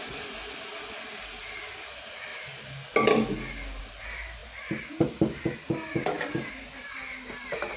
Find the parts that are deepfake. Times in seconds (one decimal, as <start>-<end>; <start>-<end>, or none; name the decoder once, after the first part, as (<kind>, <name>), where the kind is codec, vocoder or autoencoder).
none